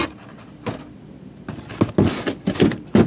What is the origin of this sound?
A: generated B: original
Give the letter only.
B